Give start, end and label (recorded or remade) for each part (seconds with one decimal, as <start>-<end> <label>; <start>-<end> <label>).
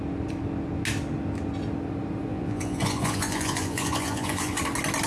0.0-2.3 recorded; 2.3-4.6 remade; 4.6-5.1 recorded